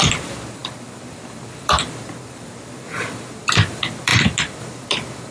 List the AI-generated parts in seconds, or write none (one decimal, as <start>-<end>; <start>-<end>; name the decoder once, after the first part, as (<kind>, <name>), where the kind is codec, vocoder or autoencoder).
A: 0.0-5.3 (vocoder, BigVGAN v2)